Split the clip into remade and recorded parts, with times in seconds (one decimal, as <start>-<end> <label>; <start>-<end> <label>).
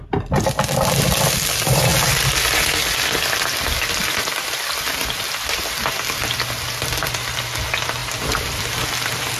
0.0-9.4 recorded